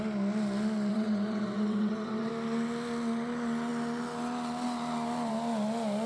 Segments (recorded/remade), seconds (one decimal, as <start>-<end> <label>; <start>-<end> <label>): 0.0-0.9 recorded; 0.9-2.3 remade; 2.3-6.1 recorded